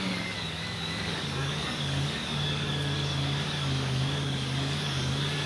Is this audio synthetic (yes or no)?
yes